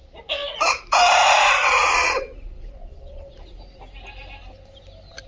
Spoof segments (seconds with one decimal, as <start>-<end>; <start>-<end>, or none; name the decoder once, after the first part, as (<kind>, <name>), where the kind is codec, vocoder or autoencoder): 1.6-3.5 (vocoder, Vocos)